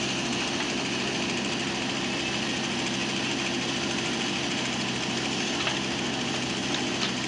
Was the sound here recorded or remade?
recorded